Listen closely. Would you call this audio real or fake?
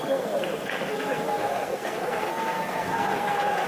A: fake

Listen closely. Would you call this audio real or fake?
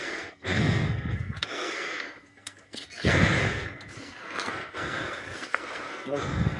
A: fake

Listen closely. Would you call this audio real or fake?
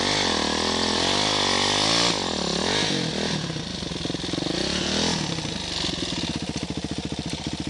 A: real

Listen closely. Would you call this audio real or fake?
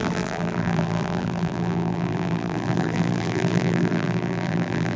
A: fake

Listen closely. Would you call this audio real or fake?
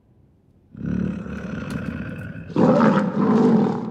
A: real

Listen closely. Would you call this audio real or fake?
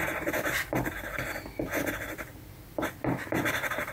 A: fake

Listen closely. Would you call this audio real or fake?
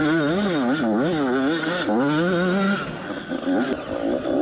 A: real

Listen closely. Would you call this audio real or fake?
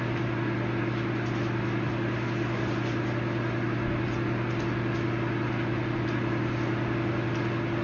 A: real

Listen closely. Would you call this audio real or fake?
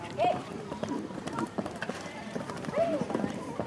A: fake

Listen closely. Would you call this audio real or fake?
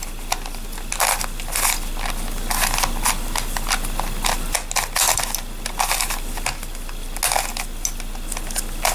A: real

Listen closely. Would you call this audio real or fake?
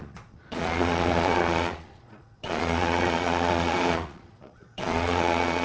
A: fake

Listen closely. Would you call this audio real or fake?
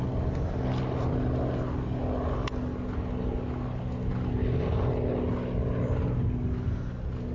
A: real